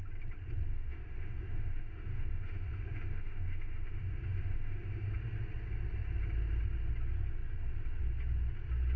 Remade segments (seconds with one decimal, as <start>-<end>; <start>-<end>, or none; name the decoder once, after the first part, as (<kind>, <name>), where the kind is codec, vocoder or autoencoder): 0.7-5.1 (autoencoder, DAC-VAE)